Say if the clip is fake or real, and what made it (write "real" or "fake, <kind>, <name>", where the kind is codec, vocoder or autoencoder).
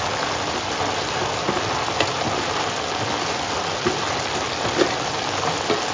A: real